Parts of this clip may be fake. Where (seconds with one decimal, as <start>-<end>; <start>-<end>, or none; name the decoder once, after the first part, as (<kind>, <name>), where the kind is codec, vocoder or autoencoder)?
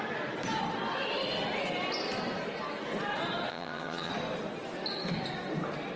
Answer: 3.5-4.1 (vocoder, HiFi-GAN)